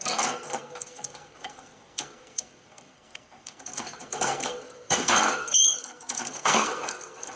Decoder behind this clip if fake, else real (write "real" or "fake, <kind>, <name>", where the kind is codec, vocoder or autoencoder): fake, codec, SNAC